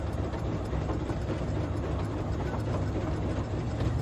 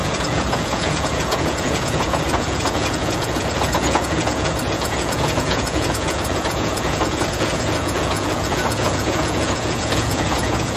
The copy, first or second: second